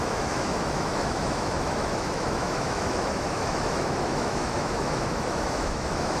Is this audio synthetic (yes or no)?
yes